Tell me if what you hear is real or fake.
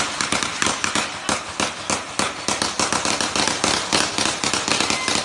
real